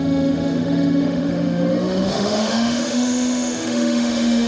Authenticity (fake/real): fake